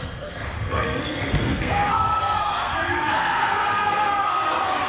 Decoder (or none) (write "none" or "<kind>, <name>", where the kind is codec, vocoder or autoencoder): codec, SNAC